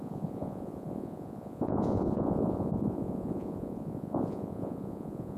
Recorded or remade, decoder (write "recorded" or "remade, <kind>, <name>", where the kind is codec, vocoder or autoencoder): remade, vocoder, Vocos